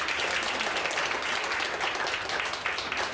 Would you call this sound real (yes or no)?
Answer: yes